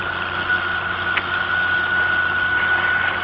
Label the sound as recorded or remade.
recorded